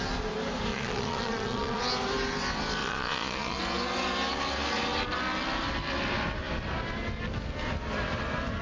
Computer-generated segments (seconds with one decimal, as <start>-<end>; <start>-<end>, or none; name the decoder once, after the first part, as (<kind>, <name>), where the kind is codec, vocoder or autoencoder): 0.7-1.8 (vocoder, Vocos); 2.8-3.6